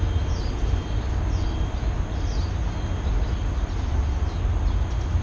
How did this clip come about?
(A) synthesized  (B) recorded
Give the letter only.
B